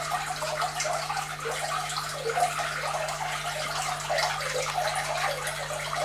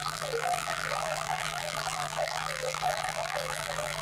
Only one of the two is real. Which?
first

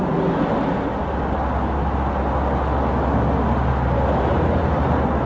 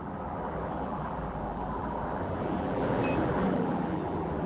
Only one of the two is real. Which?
first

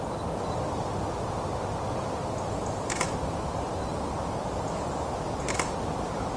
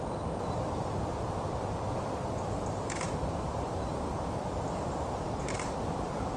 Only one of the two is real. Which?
first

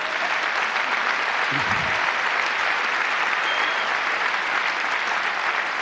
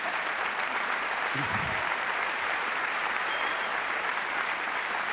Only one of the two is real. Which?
first